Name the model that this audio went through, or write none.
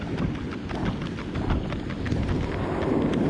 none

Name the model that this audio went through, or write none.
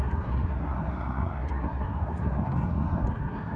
codec, SNAC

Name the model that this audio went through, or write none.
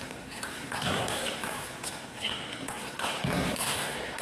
codec, SNAC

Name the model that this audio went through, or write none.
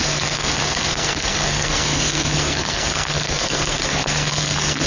codec, SNAC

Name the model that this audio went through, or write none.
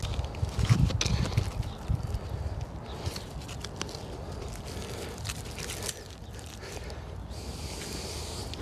none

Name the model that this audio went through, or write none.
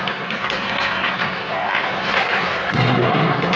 codec, SNAC